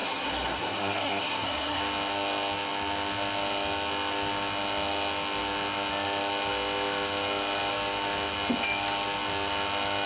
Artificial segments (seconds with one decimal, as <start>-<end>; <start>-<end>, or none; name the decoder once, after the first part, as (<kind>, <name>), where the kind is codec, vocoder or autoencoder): 0.0-1.8 (codec, SNAC)